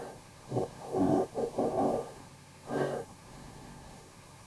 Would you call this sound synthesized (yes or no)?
yes